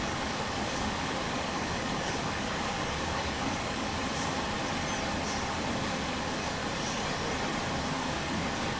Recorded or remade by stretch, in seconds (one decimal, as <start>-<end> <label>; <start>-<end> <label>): 0.0-4.0 remade; 4.0-5.7 recorded; 5.7-6.6 remade; 6.6-7.9 recorded; 7.9-8.8 remade